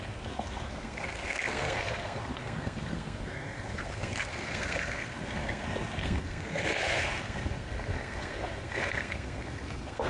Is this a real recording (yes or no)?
no